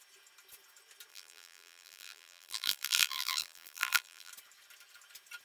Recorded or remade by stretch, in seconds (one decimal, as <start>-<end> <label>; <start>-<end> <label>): 0.0-1.1 recorded; 1.1-4.3 remade; 4.3-5.4 recorded